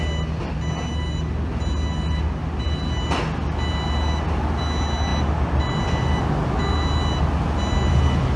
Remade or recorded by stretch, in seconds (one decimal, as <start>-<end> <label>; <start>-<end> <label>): 0.0-8.4 recorded